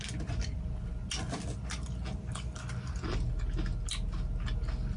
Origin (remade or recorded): recorded